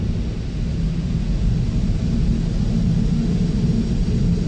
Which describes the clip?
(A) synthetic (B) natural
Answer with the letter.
B